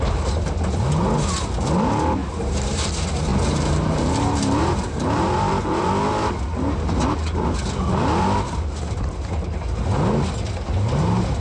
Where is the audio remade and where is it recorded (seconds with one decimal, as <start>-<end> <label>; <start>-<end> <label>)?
0.0-2.2 recorded; 2.2-2.9 remade; 2.9-3.3 recorded; 3.3-5.9 remade; 5.9-11.4 recorded